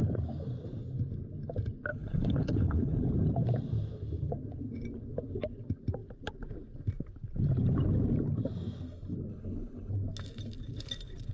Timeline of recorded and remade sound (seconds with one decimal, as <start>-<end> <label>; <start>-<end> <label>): 0.0-1.9 recorded; 1.9-3.0 remade; 3.0-9.3 recorded; 9.3-9.9 remade; 9.9-11.3 recorded